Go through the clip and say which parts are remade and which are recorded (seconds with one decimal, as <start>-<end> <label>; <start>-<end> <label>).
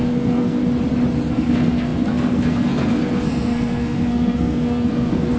0.0-0.6 remade; 0.6-1.3 recorded; 1.3-5.4 remade